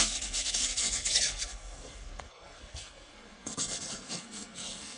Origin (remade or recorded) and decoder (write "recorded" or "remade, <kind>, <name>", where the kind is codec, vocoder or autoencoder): remade, codec, SNAC